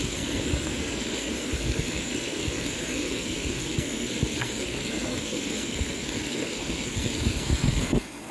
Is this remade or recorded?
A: remade